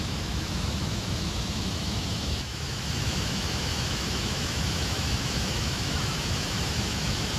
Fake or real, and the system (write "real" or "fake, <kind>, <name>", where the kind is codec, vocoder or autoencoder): fake, autoencoder, DAC-VAE